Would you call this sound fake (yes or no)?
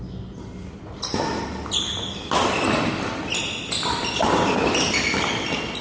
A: no